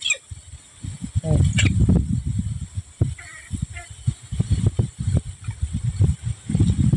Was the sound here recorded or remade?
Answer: recorded